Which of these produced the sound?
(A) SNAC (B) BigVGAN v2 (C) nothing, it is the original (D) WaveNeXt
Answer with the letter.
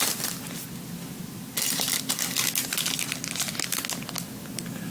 C